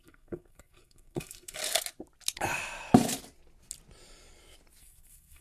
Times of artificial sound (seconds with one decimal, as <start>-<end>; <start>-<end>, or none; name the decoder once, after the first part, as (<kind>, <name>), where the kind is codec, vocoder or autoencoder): 0.0-1.6 (codec, SNAC); 4.8-5.4